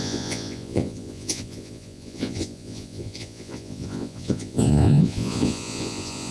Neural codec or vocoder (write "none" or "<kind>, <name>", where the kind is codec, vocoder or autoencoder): vocoder, Vocos